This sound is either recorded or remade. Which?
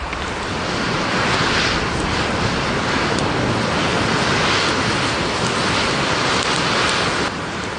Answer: recorded